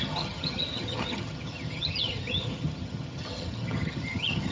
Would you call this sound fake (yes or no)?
yes